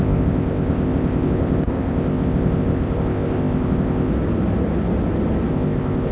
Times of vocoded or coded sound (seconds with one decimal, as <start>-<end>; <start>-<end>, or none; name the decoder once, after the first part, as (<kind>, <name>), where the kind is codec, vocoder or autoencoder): 0.0-4.1 (codec, ZipCodec); 5.5-6.1